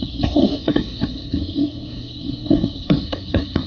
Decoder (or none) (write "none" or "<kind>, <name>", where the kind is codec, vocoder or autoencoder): codec, SNAC